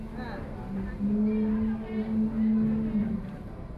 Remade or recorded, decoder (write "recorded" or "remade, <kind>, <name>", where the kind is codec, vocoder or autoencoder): recorded